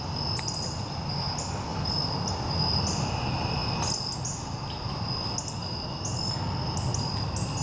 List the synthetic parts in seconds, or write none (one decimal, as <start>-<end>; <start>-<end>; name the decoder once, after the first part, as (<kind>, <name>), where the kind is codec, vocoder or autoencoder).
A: 1.7-2.6 (vocoder, BigVGAN v2)